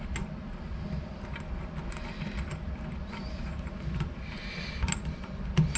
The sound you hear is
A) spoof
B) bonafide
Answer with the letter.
B